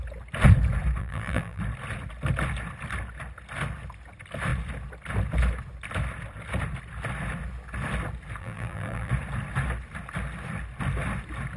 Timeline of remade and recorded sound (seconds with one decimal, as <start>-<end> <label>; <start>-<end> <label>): 0.0-1.0 recorded; 1.0-1.6 remade; 1.6-8.4 recorded; 8.4-9.1 remade; 9.1-11.6 recorded

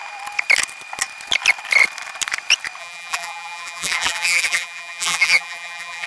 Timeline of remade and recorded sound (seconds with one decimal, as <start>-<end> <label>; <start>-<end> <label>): 0.0-2.8 recorded; 2.8-6.1 remade

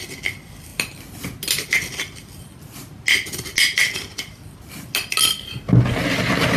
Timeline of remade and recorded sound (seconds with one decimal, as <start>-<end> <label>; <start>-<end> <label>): 0.0-6.6 recorded

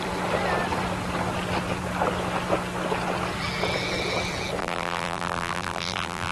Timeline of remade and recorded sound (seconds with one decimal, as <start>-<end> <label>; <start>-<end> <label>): 0.0-4.6 recorded; 4.6-6.3 remade